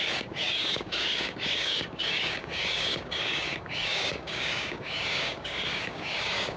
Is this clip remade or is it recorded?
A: remade